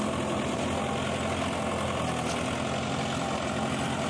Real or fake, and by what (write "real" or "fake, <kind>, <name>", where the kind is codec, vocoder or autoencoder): real